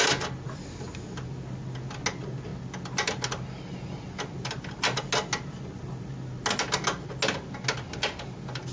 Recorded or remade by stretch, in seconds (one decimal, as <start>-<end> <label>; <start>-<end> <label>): 0.0-8.7 recorded